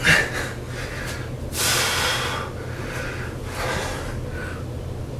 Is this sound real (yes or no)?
yes